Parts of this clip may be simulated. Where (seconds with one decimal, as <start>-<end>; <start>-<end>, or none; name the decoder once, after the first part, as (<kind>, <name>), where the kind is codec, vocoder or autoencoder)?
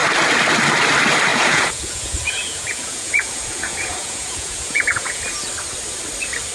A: 1.3-5.2 (vocoder, Vocos)